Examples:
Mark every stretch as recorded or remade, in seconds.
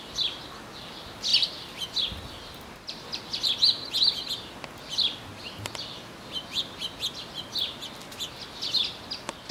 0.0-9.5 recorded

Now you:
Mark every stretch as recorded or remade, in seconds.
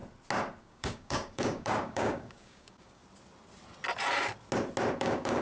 0.0-0.6 recorded; 0.6-3.0 remade; 3.0-5.0 recorded; 5.0-5.4 remade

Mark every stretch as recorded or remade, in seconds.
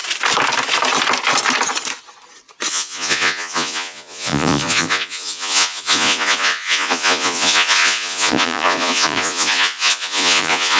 0.0-2.7 recorded; 2.7-10.8 remade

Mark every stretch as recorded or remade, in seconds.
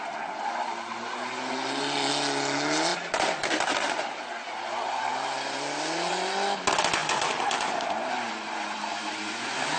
0.0-2.9 recorded; 2.9-6.1 remade; 6.1-7.0 recorded; 7.0-9.3 remade; 9.3-9.8 recorded